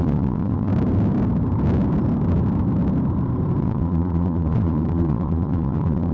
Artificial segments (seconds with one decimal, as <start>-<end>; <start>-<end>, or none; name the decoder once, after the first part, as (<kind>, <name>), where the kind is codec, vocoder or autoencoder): 0.0-0.7 (vocoder, Vocos); 3.6-6.1